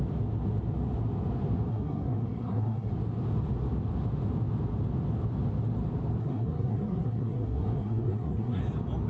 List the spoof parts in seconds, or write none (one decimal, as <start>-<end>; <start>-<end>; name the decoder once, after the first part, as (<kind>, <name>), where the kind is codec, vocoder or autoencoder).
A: 1.7-2.9 (codec, SNAC); 6.2-8.6